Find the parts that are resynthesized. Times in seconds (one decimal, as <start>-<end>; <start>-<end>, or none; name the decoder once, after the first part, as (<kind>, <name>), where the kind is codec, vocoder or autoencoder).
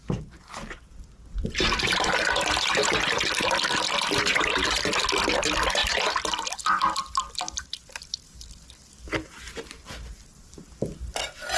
none